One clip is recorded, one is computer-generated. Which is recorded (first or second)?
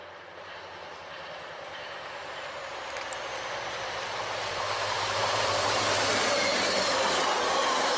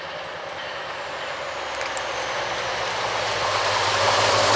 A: second